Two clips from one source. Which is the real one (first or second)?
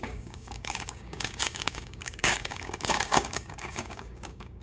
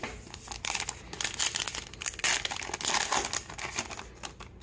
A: second